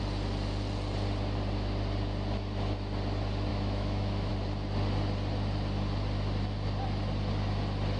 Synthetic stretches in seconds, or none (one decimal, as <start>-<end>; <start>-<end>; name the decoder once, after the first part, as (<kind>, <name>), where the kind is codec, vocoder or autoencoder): 3.5-4.3 (autoencoder, DAC-VAE)